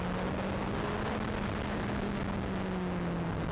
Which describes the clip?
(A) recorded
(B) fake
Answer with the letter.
A